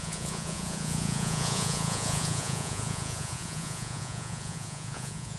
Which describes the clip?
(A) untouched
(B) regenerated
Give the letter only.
B